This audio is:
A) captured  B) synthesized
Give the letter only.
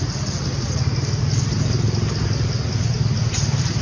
A